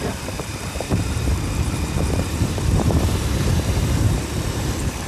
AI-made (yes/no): yes